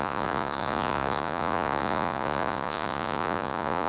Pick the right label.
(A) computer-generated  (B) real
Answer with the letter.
A